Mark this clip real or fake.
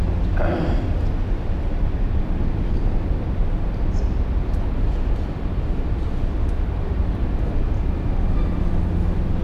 real